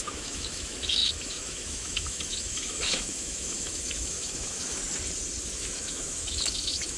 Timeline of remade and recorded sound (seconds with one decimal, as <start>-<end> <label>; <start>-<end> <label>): 0.0-4.8 remade; 4.8-5.4 recorded; 5.4-7.0 remade